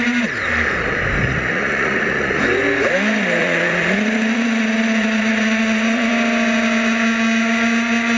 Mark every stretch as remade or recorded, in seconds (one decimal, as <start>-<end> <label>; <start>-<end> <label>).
0.0-1.2 recorded; 1.2-2.4 remade; 2.4-3.4 recorded; 3.4-6.1 remade; 6.1-8.2 recorded